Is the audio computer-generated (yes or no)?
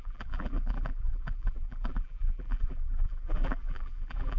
yes